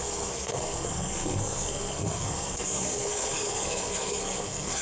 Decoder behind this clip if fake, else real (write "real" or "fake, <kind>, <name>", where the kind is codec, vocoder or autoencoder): fake, codec, SNAC